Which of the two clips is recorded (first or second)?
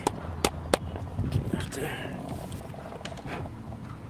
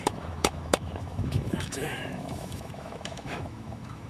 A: first